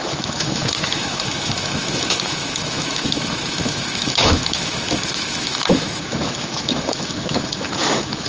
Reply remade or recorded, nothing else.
remade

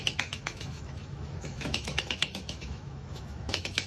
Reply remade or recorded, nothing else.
remade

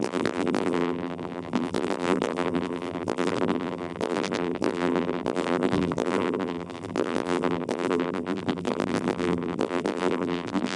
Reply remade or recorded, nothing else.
remade